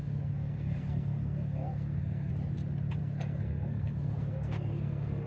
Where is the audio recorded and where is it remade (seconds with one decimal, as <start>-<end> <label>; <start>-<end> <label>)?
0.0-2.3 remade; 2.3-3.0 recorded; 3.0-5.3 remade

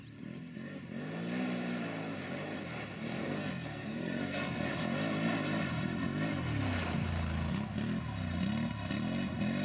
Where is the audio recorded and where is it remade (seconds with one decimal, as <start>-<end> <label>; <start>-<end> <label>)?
0.0-3.2 recorded; 3.2-4.7 remade; 4.7-9.6 recorded

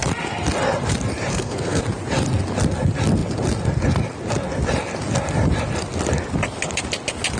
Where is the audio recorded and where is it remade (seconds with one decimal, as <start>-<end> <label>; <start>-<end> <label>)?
0.0-1.3 recorded; 1.3-1.8 remade; 1.8-7.4 recorded